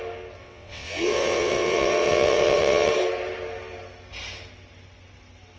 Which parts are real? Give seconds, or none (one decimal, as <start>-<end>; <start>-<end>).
0.0-0.4; 2.9-5.6